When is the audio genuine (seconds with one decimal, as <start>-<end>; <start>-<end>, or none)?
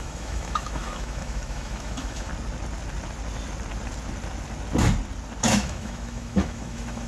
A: 2.3-5.4